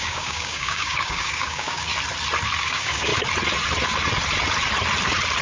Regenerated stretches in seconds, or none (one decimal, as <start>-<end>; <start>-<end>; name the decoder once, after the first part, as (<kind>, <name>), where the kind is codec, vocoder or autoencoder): 0.0-1.9 (codec, DAC); 2.6-3.1